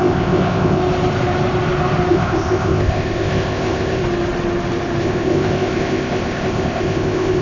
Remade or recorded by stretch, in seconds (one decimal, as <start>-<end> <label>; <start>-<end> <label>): 0.0-0.8 remade; 0.8-2.1 recorded; 2.1-4.0 remade; 4.0-5.0 recorded; 5.0-7.4 remade